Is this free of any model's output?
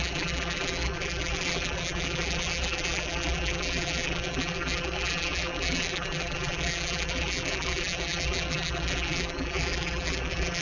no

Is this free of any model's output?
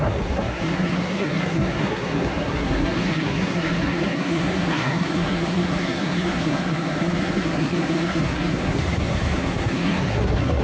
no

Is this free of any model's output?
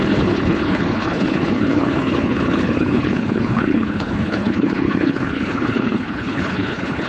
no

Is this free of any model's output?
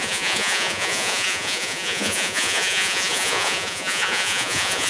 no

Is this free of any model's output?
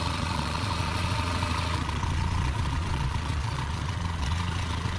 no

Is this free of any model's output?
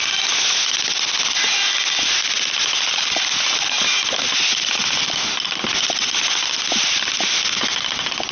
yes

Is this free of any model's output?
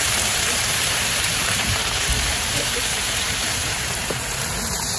no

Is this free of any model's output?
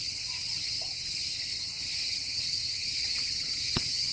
no